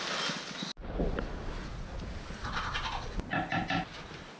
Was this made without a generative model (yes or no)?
yes